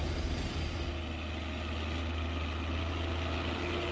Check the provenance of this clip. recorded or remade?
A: recorded